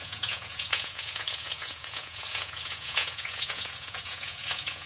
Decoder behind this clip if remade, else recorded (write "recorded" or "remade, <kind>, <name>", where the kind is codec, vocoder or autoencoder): remade, vocoder, Vocos